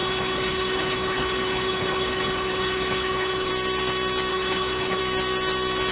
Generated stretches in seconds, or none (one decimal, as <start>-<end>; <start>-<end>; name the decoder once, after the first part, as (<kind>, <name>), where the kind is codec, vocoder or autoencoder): 0.0-3.5 (codec, HILCodec); 4.3-5.0